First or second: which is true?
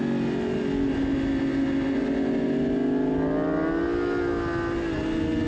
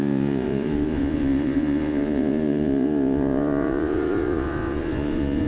first